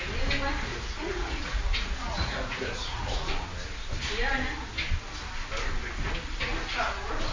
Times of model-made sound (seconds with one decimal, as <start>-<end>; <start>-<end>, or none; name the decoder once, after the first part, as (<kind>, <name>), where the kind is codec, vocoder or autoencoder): 0.7-3.3 (vocoder, Vocos)